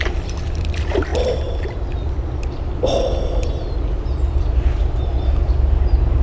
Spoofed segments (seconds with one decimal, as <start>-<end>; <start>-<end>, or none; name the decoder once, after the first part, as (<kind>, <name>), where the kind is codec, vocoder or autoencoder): none